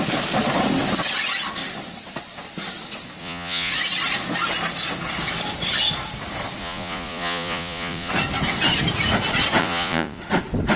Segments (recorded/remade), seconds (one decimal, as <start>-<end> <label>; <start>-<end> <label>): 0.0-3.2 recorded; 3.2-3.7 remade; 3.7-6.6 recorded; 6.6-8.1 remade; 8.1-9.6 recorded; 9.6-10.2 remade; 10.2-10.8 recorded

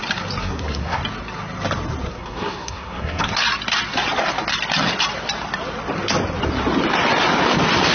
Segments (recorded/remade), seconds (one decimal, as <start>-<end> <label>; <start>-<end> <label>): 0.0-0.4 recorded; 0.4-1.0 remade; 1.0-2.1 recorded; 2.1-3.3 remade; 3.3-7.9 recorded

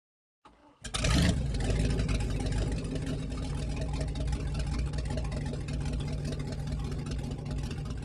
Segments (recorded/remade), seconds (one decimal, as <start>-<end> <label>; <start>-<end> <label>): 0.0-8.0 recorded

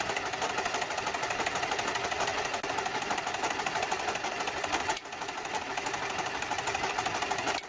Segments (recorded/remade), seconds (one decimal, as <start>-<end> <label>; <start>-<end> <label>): 0.0-7.7 recorded

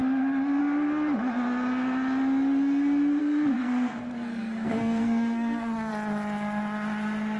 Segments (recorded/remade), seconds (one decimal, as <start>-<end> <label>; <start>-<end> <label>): 0.0-3.2 recorded; 3.2-5.9 remade; 5.9-7.4 recorded

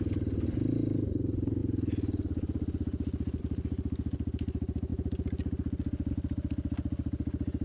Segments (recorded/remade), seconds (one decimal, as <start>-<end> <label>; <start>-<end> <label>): 0.0-7.6 recorded

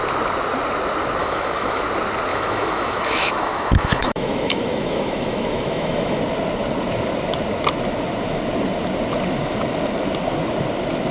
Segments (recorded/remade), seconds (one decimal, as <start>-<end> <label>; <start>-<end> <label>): 0.0-1.2 recorded; 1.2-1.8 remade; 1.8-2.3 recorded; 2.3-6.2 remade; 6.2-11.1 recorded

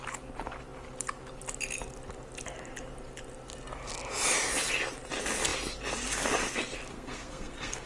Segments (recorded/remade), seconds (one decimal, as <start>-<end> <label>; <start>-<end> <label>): 0.0-6.9 recorded; 6.9-7.9 remade